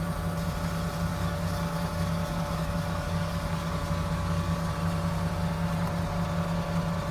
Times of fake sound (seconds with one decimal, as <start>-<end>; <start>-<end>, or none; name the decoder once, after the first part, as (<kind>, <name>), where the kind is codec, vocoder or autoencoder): 1.1-4.7 (codec, DAC)